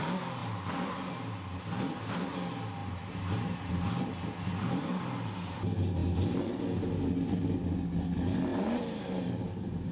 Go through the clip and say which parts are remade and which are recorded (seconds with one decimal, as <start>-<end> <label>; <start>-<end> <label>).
0.0-2.8 recorded; 2.8-3.7 remade; 3.7-9.9 recorded